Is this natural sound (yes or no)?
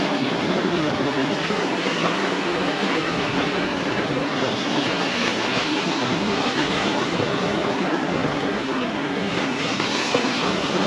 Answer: no